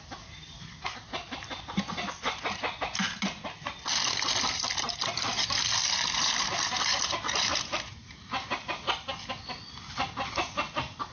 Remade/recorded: recorded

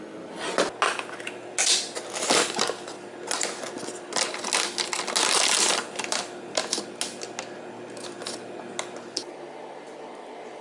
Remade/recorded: recorded